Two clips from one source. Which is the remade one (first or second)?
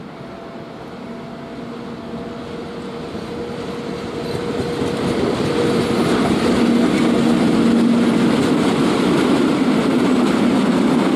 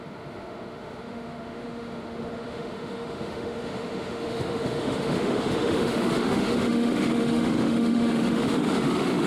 second